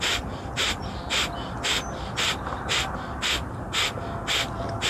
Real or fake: real